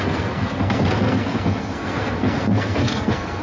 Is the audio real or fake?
fake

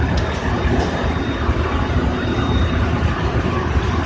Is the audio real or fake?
real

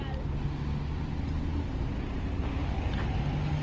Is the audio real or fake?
real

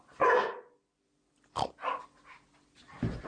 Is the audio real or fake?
real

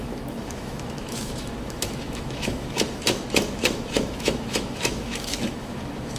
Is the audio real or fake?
fake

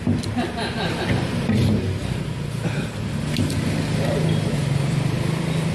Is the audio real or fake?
real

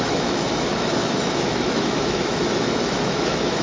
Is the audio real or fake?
fake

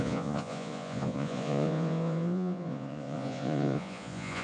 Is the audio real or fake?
fake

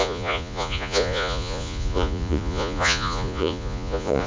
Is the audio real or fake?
fake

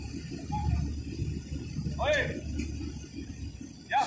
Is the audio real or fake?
real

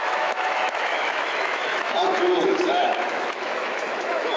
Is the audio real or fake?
fake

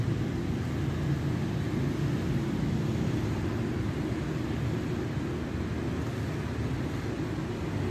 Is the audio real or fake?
real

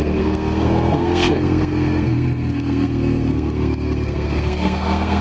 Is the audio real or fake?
fake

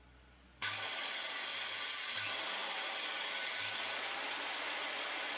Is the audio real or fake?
real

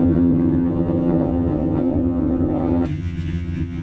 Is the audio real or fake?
fake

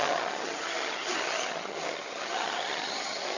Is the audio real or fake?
fake